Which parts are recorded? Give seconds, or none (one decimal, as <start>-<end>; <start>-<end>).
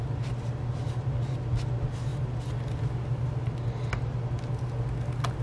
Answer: 0.0-5.4